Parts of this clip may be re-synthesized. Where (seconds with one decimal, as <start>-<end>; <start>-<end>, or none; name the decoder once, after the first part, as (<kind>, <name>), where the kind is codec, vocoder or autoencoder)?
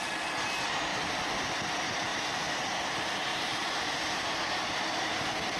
0.9-1.5 (vocoder, BigVGAN v2); 2.1-2.6; 3.3-4.0